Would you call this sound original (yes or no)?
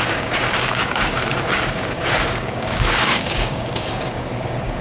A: no